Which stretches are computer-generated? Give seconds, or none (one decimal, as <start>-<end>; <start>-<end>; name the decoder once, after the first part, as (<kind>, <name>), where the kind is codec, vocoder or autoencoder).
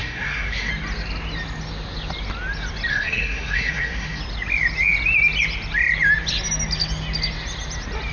0.0-0.7 (codec, SNAC); 2.9-4.2